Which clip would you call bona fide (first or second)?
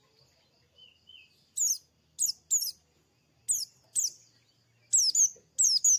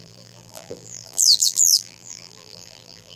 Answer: first